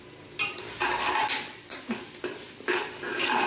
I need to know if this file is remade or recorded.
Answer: recorded